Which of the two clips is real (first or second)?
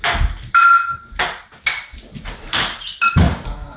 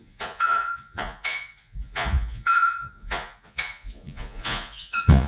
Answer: first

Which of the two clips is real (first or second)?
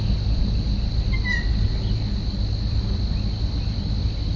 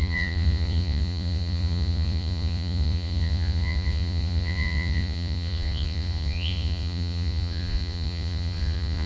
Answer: first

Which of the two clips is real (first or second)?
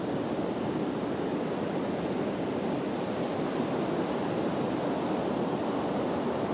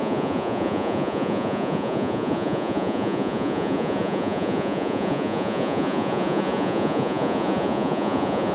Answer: first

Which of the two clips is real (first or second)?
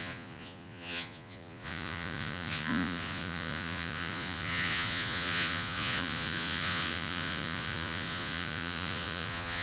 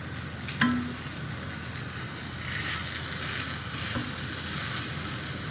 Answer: second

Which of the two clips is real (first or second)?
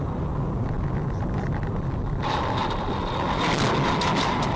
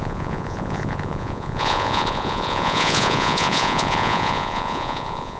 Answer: first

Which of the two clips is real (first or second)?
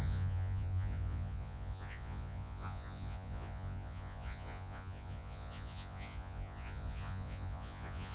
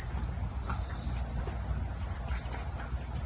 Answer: second